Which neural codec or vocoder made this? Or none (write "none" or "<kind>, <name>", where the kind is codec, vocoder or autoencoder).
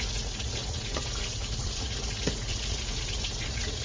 vocoder, Vocos